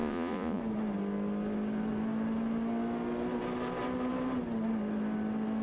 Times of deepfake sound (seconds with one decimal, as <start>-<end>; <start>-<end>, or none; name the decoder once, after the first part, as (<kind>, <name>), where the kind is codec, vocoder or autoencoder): 0.0-0.6 (vocoder, Vocos)

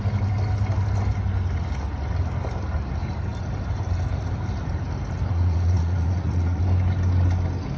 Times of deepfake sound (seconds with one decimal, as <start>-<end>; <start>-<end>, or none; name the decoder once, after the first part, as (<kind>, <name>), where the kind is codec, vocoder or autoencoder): 5.3-6.6 (vocoder, Vocos)

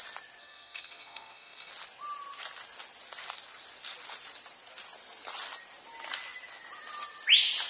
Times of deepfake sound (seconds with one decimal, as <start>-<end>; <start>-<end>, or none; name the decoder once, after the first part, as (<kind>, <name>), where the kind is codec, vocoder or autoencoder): 0.4-1.7 (codec, SNAC)

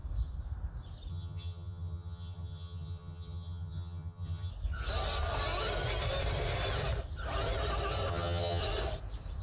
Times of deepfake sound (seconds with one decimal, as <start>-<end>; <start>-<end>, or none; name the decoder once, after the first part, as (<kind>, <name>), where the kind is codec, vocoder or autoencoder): 1.1-4.5 (vocoder, HiFi-GAN); 8.1-8.6

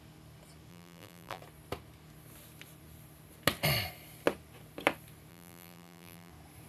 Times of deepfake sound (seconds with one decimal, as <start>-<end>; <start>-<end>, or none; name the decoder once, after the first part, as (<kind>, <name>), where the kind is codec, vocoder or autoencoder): 0.7-1.4 (vocoder, BigVGAN v2); 5.3-6.3

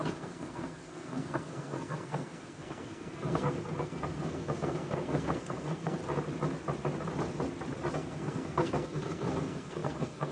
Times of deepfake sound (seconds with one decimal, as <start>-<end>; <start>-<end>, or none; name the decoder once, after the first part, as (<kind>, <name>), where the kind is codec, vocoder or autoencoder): 0.0-6.0 (codec, SNAC); 7.9-10.3